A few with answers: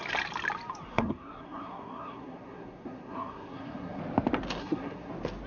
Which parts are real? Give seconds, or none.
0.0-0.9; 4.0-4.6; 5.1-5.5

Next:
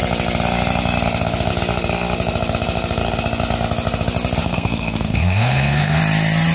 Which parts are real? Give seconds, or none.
0.0-4.4; 6.0-6.5

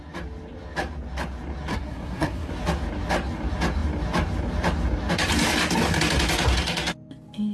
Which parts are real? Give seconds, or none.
0.0-1.7; 2.5-7.5

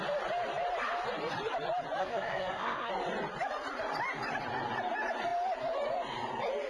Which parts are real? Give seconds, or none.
0.0-2.0; 2.9-6.7